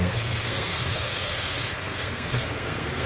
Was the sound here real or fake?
fake